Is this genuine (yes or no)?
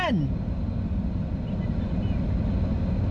yes